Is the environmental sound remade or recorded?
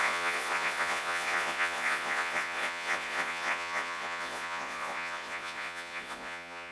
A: remade